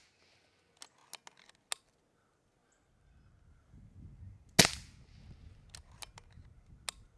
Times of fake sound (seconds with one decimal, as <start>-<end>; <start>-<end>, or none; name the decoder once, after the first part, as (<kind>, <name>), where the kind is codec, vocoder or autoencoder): none